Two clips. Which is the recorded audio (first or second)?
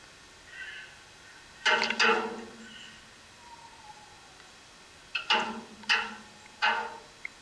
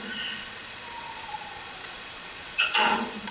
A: first